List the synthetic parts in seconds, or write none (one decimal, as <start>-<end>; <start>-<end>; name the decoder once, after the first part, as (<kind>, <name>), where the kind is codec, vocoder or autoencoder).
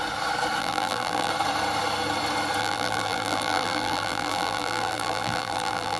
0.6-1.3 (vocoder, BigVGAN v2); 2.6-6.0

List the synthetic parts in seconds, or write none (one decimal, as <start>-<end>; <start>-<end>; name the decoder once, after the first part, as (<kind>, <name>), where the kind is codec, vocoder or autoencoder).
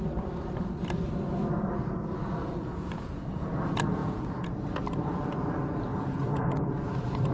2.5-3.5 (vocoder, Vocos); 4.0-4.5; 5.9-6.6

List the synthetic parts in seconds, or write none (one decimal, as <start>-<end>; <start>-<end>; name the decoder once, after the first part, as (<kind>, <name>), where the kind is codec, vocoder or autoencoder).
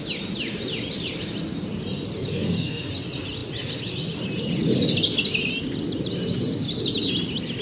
2.3-2.9 (codec, SNAC)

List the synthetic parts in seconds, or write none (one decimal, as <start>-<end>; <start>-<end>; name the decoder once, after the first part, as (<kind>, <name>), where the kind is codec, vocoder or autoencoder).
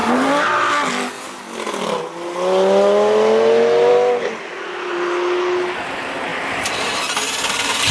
none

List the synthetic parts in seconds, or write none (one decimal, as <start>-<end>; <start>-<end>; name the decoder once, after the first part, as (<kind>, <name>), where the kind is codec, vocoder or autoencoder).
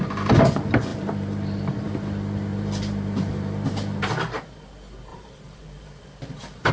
0.9-1.9 (vocoder, BigVGAN v2); 2.5-4.4; 5.1-6.7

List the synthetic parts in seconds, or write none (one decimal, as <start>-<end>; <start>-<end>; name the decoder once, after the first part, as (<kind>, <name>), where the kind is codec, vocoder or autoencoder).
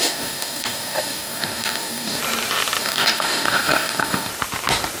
0.0-2.2 (codec, DAC); 2.8-4.3